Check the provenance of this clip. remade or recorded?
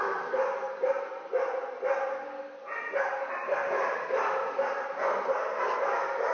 recorded